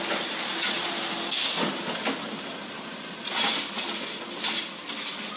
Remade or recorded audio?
recorded